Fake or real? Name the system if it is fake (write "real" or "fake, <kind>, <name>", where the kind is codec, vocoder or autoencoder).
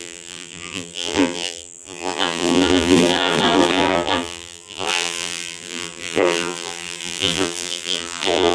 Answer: fake, vocoder, BigVGAN v2